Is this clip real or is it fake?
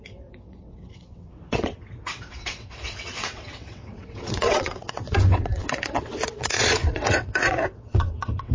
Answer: fake